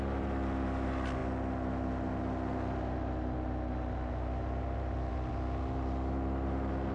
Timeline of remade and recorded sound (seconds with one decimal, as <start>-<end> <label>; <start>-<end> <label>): 0.0-6.9 recorded